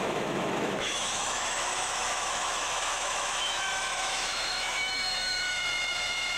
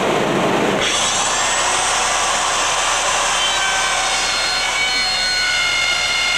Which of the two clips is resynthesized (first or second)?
first